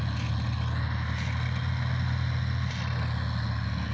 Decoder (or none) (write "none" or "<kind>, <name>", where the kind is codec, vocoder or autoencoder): none